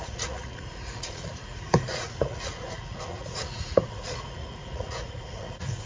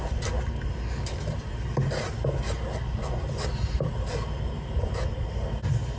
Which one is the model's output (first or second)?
first